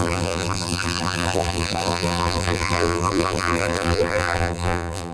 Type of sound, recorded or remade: remade